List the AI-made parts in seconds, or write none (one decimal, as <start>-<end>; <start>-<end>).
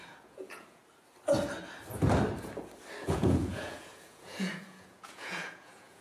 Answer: 0.0-0.8; 3.0-6.0